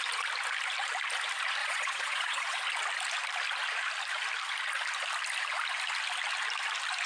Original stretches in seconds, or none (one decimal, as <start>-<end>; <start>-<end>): 0.0-1.6; 2.6-7.1